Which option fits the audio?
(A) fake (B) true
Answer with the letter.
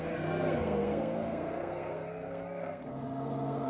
A